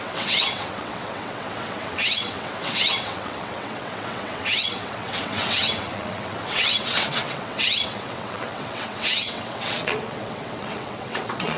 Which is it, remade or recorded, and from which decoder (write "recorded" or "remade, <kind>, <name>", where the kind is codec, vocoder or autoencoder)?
remade, vocoder, WaveNeXt